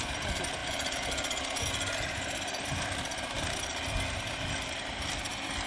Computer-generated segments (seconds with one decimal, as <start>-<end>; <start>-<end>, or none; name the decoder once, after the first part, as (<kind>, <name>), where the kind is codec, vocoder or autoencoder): none